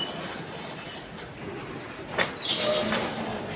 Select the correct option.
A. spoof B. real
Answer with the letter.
B